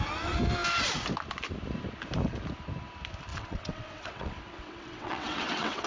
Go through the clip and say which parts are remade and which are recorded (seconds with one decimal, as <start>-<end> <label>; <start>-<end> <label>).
0.0-3.3 recorded; 3.3-5.9 remade